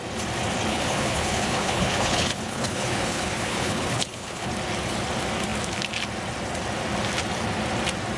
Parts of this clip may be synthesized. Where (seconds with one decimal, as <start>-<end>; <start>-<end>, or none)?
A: 0.7-4.5